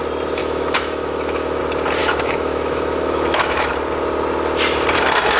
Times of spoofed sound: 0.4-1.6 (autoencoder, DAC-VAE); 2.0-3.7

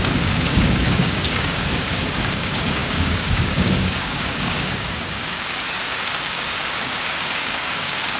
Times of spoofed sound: 0.0-8.2 (codec, DAC)

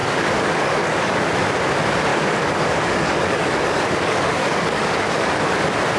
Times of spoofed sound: 0.0-1.4 (codec, DAC); 2.1-5.4